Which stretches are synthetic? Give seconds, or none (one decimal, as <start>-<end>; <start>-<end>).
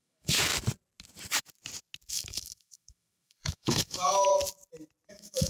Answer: 0.0-0.5; 2.1-4.3; 5.1-5.5